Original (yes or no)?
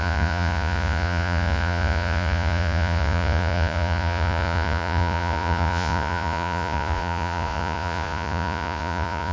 no